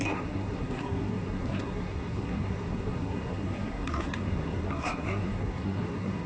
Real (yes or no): no